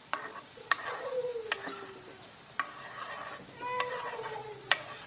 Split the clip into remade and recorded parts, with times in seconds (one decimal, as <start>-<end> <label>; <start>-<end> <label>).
0.0-1.3 remade; 1.3-3.9 recorded; 3.9-5.1 remade

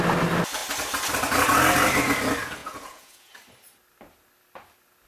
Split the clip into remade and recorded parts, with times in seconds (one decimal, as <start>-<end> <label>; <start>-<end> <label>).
0.0-2.6 recorded; 2.6-3.3 remade; 3.3-5.1 recorded

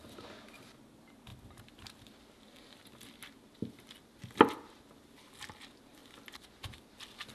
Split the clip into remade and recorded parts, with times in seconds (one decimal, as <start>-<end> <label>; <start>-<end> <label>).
0.0-7.3 recorded

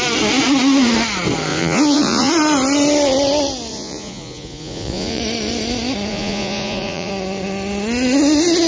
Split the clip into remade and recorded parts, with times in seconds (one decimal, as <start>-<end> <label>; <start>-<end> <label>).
0.0-1.5 recorded; 1.5-2.3 remade; 2.3-3.7 recorded; 3.7-5.2 remade; 5.2-6.1 recorded; 6.1-7.1 remade; 7.1-8.7 recorded